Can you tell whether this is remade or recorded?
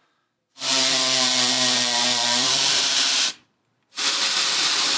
remade